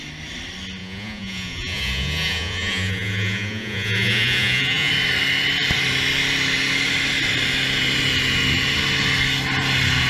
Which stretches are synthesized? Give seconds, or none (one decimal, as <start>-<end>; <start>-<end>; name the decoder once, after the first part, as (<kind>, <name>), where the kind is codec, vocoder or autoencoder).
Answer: 0.8-4.9 (vocoder, Vocos)